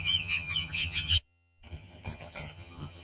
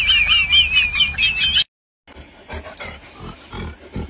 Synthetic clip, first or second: first